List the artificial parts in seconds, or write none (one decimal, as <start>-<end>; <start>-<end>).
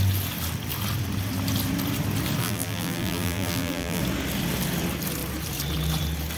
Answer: 2.4-4.0